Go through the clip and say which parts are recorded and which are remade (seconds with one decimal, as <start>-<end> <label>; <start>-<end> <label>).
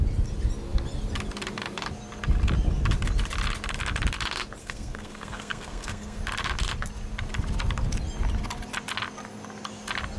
0.0-4.6 recorded; 4.6-6.2 remade; 6.2-10.2 recorded